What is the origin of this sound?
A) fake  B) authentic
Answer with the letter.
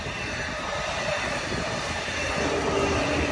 B